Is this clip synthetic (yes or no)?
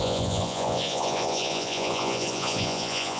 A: yes